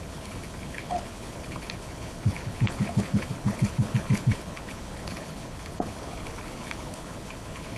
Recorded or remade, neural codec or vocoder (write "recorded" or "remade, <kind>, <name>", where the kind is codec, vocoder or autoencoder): remade, codec, HILCodec